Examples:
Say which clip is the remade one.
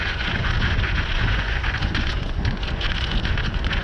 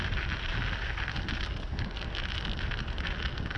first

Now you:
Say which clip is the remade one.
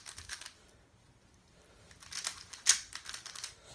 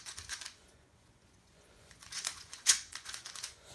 second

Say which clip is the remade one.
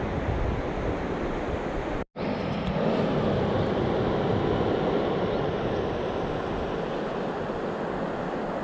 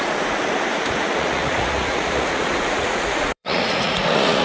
second